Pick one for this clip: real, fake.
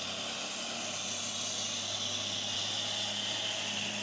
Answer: real